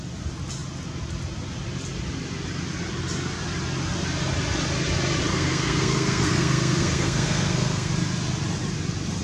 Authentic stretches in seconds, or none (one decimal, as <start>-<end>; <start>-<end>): 0.0-5.3; 7.9-9.2